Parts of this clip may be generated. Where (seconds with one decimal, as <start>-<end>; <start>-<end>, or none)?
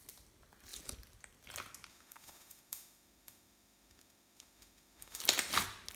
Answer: 1.9-5.2